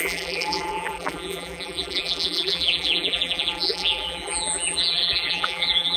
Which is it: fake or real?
fake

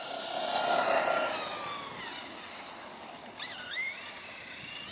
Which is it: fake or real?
real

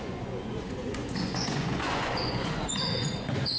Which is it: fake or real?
fake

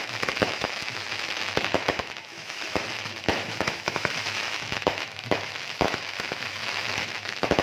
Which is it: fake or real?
fake